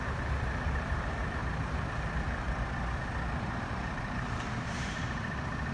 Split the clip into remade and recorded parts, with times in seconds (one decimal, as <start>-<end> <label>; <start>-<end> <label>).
0.0-1.4 remade; 1.4-3.6 recorded; 3.6-5.7 remade